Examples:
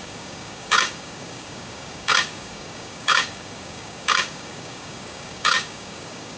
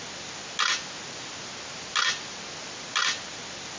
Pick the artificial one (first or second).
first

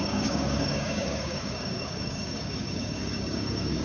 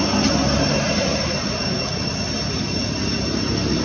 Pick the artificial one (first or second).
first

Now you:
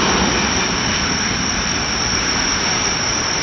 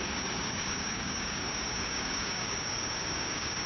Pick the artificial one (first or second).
second